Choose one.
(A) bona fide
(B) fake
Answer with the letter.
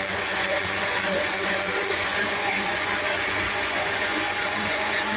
B